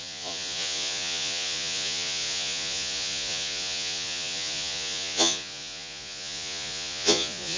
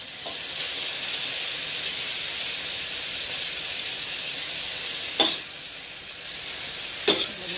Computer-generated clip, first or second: first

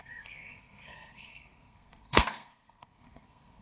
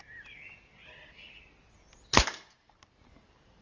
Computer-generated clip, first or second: first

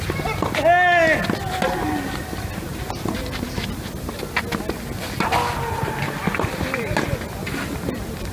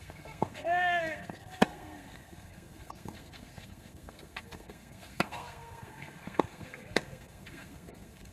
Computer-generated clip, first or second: second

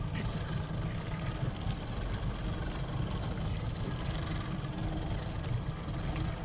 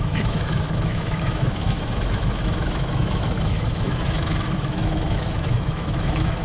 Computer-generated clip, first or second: second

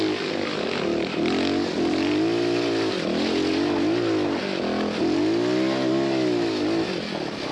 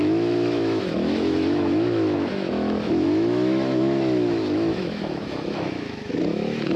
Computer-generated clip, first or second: second